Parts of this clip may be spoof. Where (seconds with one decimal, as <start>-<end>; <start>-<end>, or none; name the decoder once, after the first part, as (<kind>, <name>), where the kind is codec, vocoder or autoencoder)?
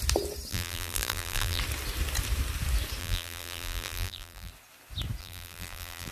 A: 0.5-1.6 (vocoder, BigVGAN v2); 3.0-4.5; 5.2-6.1